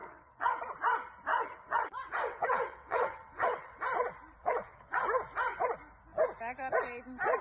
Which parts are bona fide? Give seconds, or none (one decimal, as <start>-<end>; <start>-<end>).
0.6-1.3; 3.8-4.4; 5.0-7.4